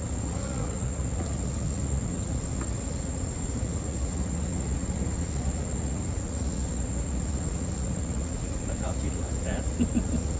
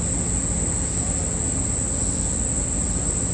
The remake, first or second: first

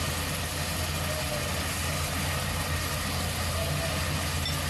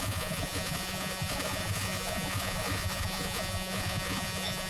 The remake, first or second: second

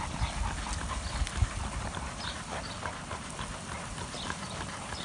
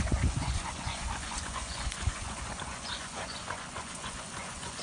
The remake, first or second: second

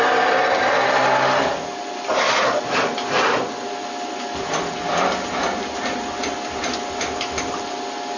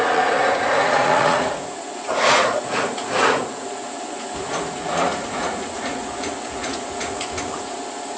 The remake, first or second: second